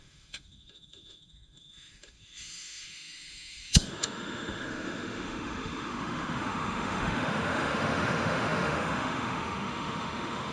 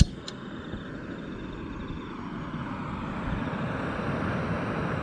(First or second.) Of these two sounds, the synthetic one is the first